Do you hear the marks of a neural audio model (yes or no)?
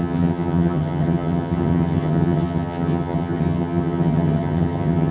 yes